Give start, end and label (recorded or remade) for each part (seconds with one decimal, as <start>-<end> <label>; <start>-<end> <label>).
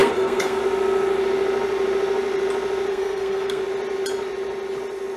0.0-0.6 remade; 0.6-2.9 recorded; 2.9-3.6 remade; 3.6-5.2 recorded